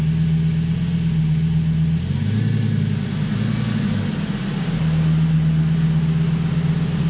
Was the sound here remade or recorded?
recorded